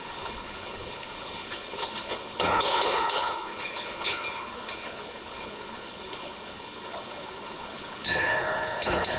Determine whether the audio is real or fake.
fake